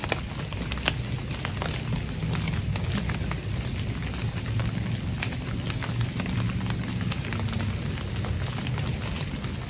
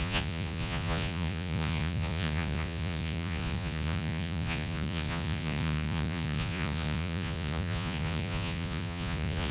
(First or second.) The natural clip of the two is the first